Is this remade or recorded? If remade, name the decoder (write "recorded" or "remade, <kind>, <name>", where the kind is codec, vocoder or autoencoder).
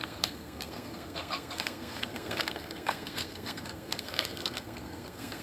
remade, codec, SNAC